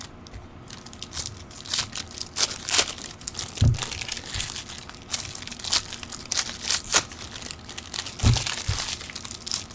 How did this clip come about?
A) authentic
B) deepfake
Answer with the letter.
A